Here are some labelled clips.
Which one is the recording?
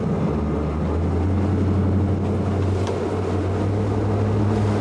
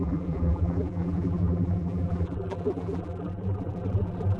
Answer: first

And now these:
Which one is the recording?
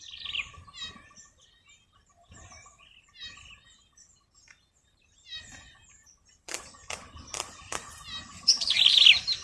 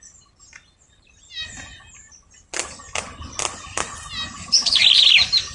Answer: second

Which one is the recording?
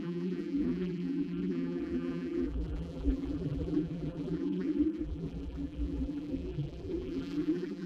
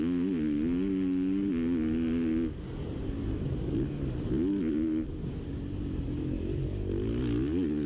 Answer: second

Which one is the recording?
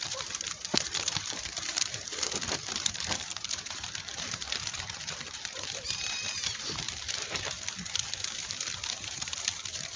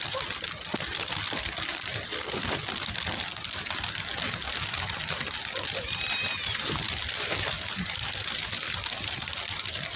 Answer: second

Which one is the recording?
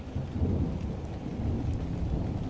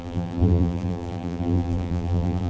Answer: first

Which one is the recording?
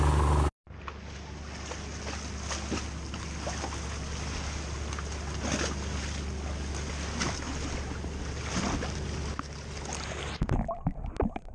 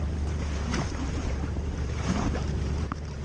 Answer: first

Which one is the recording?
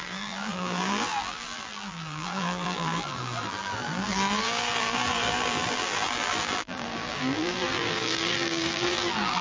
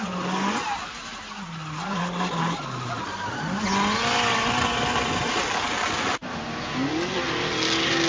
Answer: second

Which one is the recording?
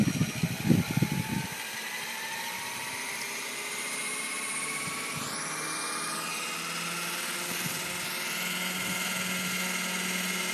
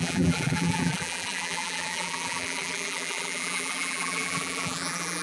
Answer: first